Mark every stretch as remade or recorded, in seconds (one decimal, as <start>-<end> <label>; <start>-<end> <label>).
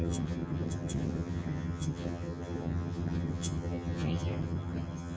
0.0-5.2 remade